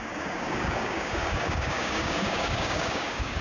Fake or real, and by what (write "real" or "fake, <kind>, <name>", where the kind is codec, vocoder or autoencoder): fake, codec, DAC